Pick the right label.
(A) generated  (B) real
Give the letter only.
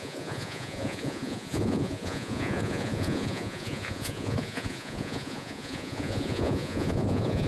A